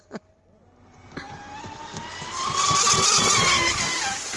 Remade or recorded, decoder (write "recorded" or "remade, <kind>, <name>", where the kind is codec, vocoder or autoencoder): recorded